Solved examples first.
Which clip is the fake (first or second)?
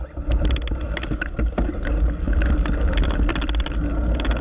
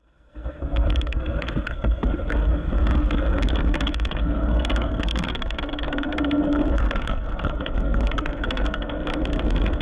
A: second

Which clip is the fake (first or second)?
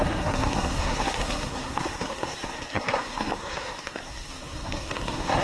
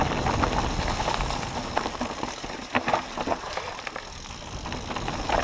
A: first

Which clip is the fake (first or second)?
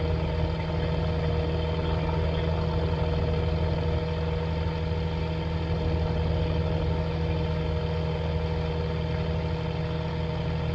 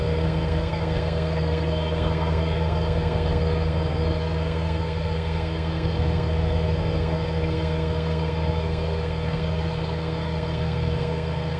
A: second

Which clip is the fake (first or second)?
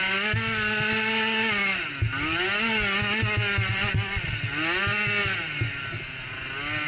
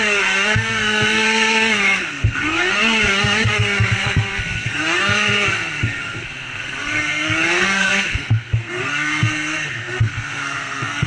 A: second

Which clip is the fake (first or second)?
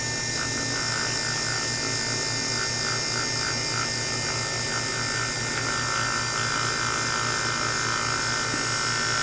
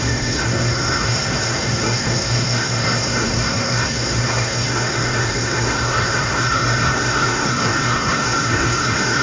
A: second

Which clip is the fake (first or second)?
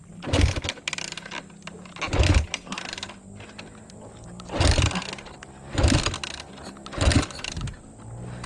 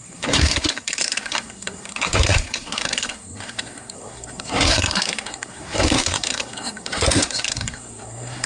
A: second